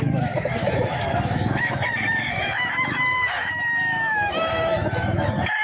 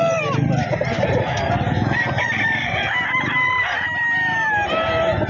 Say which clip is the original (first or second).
second